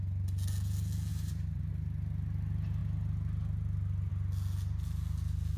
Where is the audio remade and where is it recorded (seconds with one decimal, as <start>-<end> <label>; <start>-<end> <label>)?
0.0-1.1 recorded; 1.1-1.7 remade; 1.7-5.6 recorded